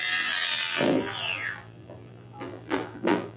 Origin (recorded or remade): remade